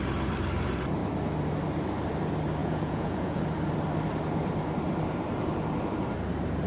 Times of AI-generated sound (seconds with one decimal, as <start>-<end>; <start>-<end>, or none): 2.6-3.4